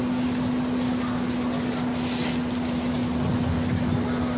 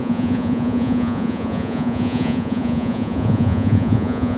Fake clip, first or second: second